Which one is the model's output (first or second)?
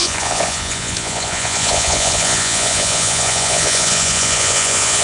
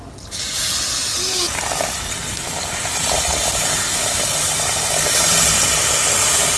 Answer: first